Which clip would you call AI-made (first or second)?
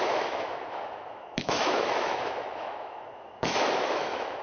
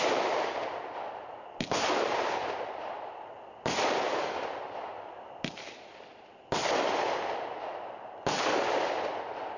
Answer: first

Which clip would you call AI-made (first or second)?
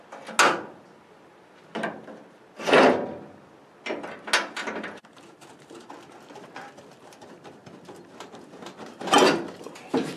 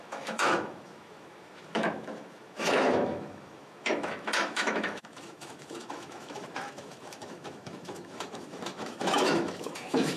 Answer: second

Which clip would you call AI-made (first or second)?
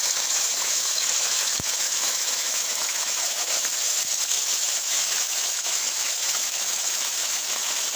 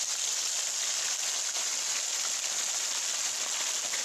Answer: first